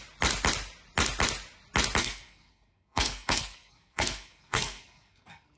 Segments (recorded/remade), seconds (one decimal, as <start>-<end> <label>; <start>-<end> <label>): 0.0-2.0 recorded; 2.0-5.6 remade